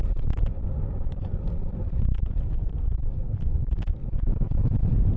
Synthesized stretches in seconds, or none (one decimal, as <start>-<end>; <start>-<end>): none